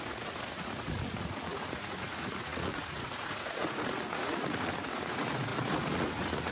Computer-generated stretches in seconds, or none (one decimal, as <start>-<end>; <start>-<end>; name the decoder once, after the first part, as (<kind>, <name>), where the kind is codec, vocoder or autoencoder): 0.0-6.5 (vocoder, Vocos)